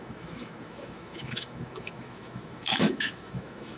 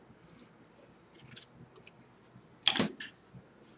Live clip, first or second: second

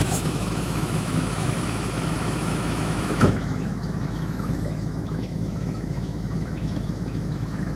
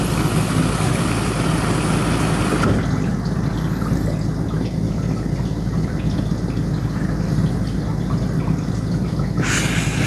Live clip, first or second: second